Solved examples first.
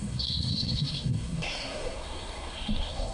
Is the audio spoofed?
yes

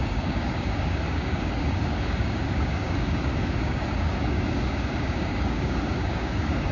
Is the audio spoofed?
yes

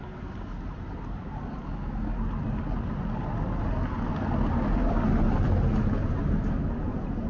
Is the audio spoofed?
no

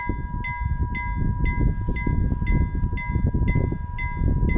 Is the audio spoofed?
no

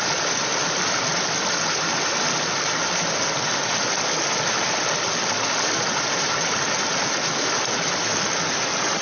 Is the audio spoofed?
no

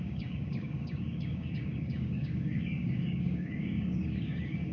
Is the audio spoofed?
yes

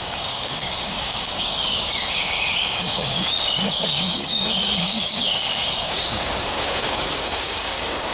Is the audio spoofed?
yes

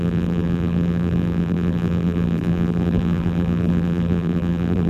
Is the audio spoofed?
yes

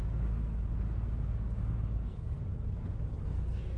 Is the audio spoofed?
yes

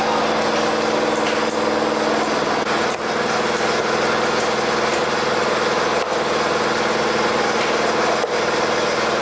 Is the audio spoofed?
no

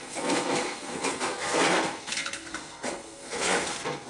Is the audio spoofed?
yes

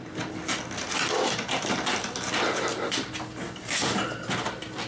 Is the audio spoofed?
no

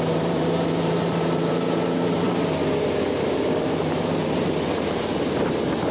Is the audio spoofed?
yes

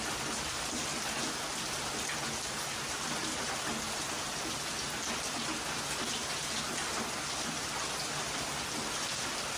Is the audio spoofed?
no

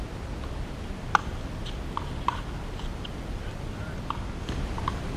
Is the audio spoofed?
no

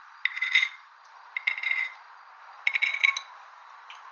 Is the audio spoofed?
no